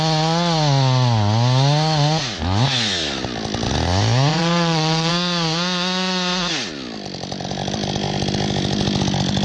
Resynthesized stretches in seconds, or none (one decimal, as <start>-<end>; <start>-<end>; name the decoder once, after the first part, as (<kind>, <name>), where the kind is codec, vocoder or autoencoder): 4.3-5.1 (vocoder, WaveNeXt)